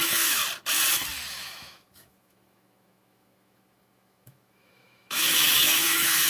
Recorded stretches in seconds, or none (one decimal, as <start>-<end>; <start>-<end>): 0.4-1.3